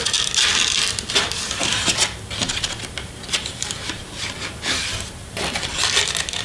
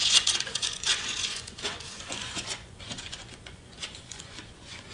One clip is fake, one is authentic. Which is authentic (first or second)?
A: first